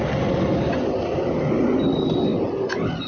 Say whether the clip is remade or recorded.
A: recorded